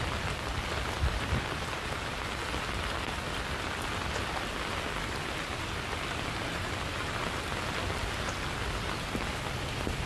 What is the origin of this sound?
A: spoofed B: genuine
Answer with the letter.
B